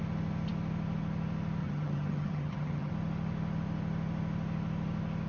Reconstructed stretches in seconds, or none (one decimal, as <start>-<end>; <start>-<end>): 1.6-2.9